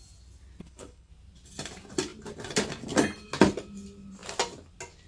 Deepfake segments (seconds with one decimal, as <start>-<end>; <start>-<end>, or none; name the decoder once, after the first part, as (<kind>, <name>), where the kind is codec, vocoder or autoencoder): 0.6-1.1 (codec, HILCodec)